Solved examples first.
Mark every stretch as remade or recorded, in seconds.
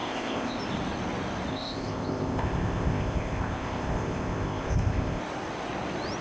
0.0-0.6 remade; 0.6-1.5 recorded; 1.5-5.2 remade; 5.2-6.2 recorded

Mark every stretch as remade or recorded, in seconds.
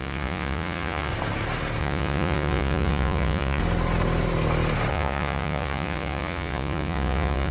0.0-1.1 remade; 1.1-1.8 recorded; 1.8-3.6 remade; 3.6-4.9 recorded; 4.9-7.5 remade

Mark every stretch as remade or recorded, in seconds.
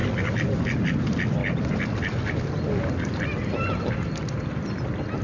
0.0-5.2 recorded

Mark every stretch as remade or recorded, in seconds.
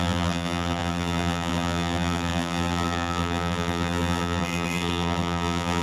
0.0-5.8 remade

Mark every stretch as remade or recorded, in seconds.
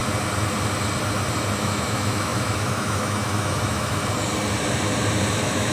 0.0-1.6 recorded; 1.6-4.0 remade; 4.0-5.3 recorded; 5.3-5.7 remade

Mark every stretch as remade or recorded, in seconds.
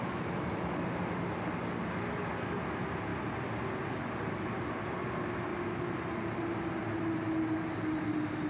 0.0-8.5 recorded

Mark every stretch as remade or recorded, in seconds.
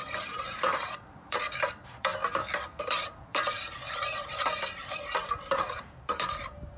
0.0-2.1 remade; 2.1-2.8 recorded; 2.8-6.8 remade